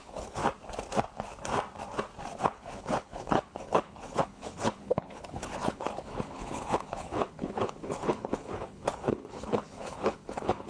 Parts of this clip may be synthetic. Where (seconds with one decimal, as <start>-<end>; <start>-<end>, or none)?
0.0-0.4; 2.4-10.7